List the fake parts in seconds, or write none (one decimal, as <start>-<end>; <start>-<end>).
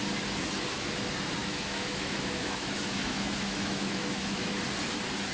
1.4-4.6